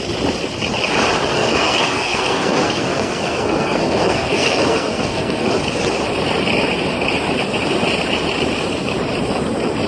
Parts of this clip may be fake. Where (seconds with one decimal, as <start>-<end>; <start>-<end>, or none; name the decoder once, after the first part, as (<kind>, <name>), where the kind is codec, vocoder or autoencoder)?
1.3-5.5 (codec, SNAC)